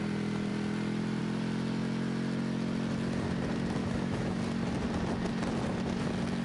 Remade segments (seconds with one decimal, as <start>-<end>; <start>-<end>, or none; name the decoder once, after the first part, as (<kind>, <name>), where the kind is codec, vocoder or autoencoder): 3.8-4.4 (autoencoder, DAC-VAE)